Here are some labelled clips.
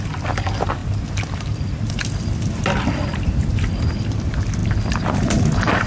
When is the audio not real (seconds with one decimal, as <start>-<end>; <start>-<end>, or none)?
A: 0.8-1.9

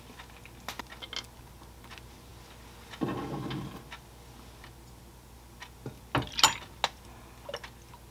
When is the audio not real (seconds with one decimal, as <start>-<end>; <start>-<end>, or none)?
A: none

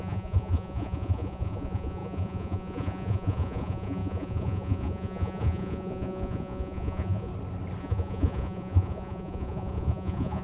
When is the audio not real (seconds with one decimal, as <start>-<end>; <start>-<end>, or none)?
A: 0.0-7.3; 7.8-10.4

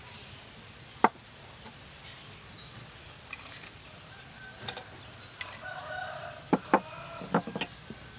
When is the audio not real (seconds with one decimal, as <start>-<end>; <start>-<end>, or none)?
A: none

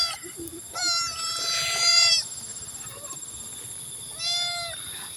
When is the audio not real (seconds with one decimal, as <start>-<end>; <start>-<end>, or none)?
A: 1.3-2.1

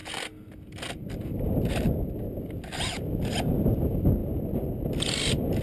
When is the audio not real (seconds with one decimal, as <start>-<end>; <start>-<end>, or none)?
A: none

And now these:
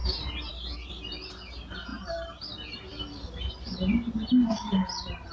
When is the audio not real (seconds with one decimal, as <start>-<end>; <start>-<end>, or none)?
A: 0.0-0.5